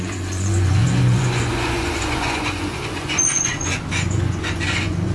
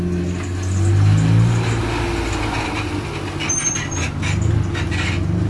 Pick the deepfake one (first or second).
first